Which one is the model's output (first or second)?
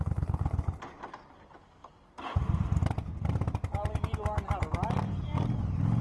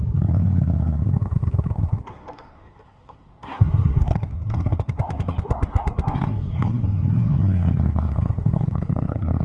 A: second